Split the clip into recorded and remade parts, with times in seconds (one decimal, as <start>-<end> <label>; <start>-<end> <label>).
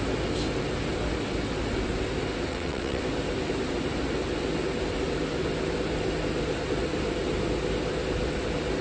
0.0-2.5 recorded; 2.5-3.0 remade; 3.0-8.8 recorded